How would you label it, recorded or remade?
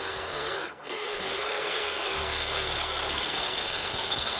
remade